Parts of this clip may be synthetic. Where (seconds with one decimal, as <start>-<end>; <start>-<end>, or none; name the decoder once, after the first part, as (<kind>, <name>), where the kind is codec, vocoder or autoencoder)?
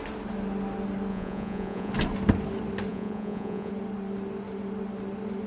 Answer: 1.1-1.9 (vocoder, Vocos); 2.9-3.7